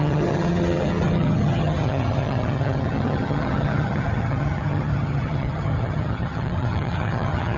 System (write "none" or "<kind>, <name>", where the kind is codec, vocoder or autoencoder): vocoder, HiFi-GAN